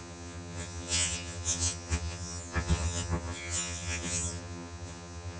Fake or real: fake